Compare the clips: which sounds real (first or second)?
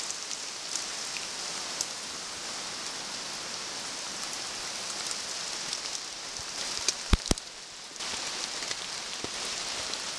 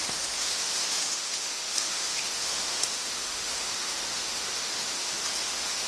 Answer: first